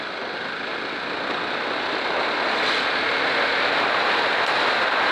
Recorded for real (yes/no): yes